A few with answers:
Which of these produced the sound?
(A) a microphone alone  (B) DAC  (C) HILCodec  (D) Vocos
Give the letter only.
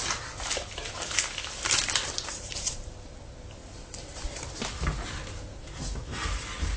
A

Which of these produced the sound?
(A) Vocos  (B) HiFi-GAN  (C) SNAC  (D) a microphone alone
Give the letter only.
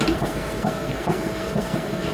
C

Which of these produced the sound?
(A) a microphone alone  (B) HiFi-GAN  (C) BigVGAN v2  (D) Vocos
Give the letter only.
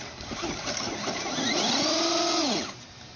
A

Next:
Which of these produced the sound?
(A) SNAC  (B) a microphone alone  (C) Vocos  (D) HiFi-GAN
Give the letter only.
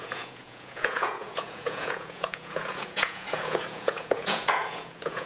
C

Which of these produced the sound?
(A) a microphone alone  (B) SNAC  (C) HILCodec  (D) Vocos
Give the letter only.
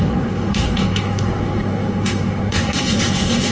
B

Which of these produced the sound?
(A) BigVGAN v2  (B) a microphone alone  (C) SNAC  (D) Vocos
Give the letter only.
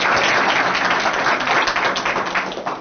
B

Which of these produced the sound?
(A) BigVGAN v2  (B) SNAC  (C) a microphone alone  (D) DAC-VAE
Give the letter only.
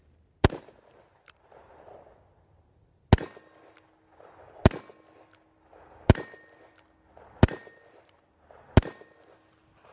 C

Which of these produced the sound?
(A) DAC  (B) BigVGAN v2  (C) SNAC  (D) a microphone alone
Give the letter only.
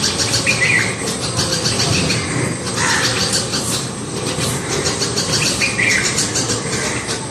D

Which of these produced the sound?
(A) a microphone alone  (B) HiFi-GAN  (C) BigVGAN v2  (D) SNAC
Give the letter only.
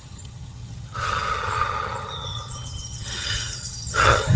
B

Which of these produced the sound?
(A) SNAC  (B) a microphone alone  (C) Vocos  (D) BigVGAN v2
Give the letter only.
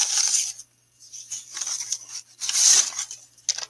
B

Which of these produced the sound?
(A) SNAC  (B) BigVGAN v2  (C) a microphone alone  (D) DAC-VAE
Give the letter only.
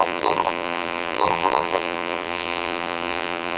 B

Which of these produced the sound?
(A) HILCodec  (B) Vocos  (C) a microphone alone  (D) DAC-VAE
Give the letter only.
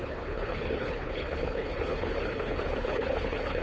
A